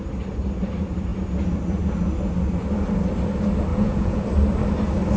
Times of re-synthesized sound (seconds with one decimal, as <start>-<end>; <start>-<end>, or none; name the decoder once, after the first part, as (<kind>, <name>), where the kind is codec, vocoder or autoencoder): 3.7-4.2 (vocoder, Vocos)